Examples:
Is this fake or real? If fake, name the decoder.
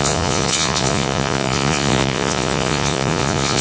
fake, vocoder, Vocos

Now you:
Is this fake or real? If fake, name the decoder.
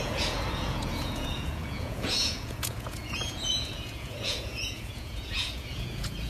fake, vocoder, Vocos